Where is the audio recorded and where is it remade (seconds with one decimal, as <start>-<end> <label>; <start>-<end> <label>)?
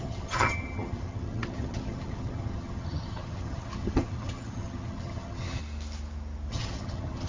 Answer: 0.0-5.6 remade; 5.6-6.5 recorded; 6.5-7.3 remade